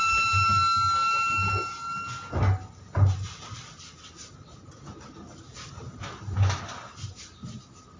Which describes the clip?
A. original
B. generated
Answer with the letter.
A